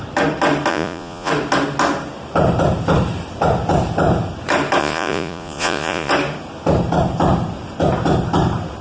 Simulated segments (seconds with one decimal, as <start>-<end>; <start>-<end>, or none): 0.7-1.3; 4.8-6.1